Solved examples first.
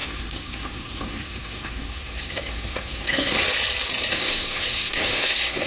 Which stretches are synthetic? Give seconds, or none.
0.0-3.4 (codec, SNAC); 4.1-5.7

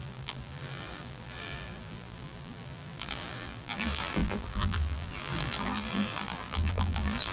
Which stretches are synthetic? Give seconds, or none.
0.0-7.3 (vocoder, BigVGAN v2)

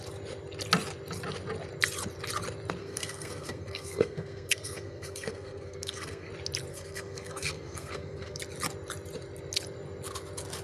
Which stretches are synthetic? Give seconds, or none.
2.8-6.3 (codec, SNAC); 6.7-8.4